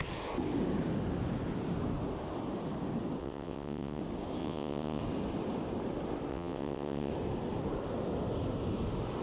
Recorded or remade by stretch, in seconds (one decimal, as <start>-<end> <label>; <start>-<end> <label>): 0.0-3.2 recorded; 3.2-4.0 remade; 4.0-4.4 recorded; 4.4-5.0 remade; 5.0-6.3 recorded; 6.3-7.1 remade; 7.1-9.2 recorded